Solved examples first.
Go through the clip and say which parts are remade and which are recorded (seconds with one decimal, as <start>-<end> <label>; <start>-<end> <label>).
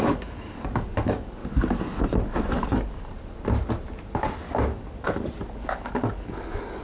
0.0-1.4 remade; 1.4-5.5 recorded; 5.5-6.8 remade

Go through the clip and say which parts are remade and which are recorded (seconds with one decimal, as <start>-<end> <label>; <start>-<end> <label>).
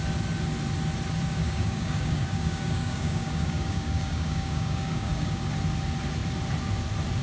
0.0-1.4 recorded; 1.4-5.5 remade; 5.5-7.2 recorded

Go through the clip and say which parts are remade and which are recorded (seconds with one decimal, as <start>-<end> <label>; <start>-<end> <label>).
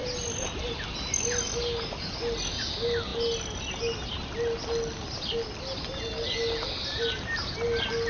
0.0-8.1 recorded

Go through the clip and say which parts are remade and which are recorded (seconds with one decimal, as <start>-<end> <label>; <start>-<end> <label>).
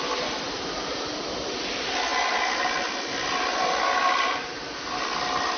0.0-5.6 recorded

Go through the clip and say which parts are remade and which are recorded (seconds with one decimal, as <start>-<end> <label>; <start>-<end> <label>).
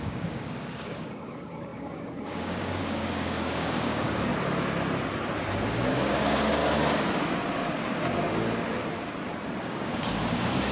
0.0-4.3 remade; 4.3-5.9 recorded; 5.9-6.6 remade; 6.6-9.6 recorded; 9.6-10.7 remade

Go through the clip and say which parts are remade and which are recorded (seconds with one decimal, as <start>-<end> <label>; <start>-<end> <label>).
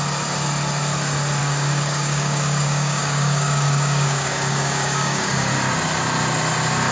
0.0-1.4 recorded; 1.4-5.5 remade; 5.5-6.9 recorded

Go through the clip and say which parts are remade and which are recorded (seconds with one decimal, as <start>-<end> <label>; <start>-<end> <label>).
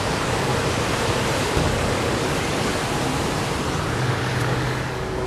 0.0-0.5 remade; 0.5-1.4 recorded; 1.4-2.7 remade; 2.7-3.9 recorded; 3.9-5.3 remade